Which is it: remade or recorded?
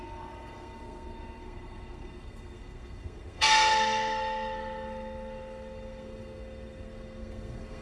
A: remade